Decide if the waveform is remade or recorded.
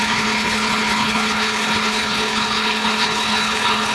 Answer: remade